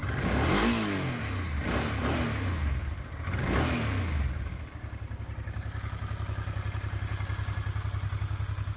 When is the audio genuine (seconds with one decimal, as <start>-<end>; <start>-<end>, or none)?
0.0-8.8